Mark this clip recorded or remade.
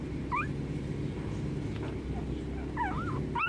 recorded